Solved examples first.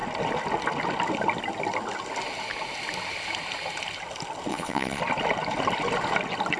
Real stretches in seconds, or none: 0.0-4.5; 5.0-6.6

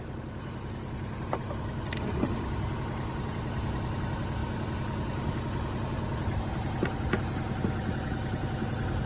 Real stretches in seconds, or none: 0.0-9.1

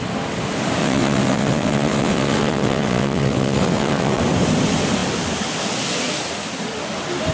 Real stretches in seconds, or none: 0.0-0.8; 4.2-7.3